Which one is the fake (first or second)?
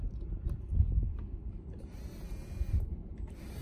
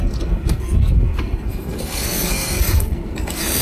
second